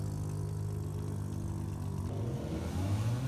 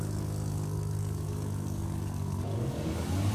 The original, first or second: first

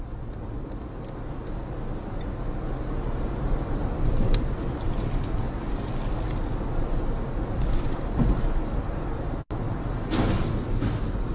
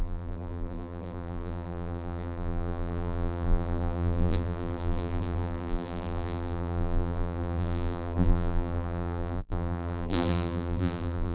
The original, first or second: first